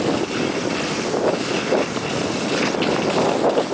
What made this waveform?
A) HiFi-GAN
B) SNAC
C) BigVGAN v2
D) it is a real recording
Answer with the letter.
D